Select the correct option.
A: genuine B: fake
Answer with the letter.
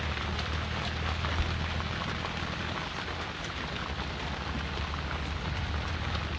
A